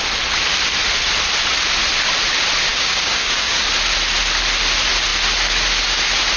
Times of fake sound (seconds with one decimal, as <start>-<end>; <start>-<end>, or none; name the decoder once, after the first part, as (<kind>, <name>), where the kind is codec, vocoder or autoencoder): 2.7-3.6 (codec, DAC)